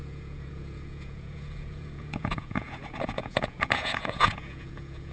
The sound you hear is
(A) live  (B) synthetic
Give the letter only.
B